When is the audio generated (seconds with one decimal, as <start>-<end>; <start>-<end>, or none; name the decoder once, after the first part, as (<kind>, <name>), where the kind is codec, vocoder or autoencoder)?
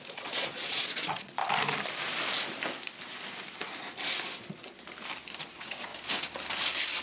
0.0-1.4 (vocoder, Vocos); 5.5-5.9